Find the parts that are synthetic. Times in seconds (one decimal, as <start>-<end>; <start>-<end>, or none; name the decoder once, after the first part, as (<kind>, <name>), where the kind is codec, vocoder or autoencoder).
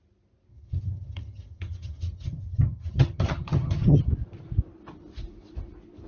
0.5-4.0 (vocoder, HiFi-GAN)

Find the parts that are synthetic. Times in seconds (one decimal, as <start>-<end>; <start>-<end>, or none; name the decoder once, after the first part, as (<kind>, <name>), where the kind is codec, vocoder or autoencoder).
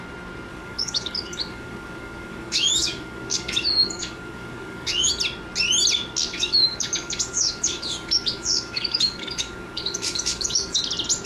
0.5-5.1 (codec, DAC); 6.3-10.8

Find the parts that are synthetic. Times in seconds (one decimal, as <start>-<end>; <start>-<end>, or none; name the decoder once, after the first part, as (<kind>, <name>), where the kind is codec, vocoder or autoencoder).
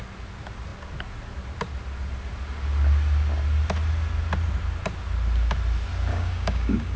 6.1-7.0 (codec, DAC)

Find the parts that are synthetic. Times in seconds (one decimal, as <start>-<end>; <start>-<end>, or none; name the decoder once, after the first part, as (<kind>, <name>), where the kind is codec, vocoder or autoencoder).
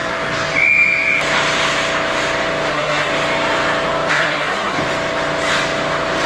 2.7-3.1 (codec, SNAC); 4.1-4.8